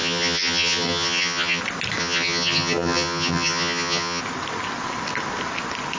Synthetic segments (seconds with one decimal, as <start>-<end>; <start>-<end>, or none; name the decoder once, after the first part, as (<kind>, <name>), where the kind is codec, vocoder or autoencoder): 0.0-1.6 (vocoder, HiFi-GAN); 2.0-4.2